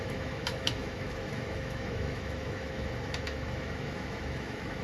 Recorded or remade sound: remade